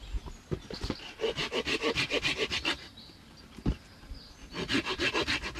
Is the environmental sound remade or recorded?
recorded